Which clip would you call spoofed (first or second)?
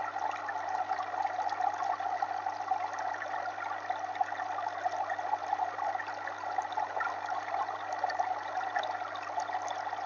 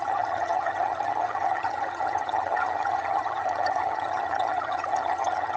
second